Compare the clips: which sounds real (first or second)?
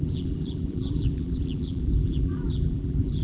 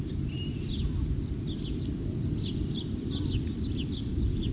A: second